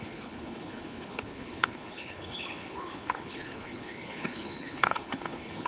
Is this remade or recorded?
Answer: remade